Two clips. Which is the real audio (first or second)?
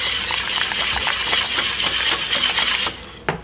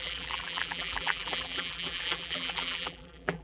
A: first